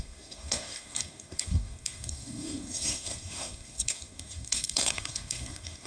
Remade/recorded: remade